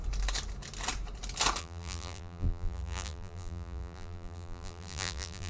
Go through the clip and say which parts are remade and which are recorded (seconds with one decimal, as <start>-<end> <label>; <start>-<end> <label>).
0.0-1.6 recorded; 1.6-5.5 remade